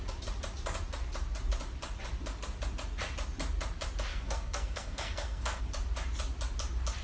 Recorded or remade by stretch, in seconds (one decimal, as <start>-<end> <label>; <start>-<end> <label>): 0.0-4.1 recorded; 4.1-5.6 remade; 5.6-7.0 recorded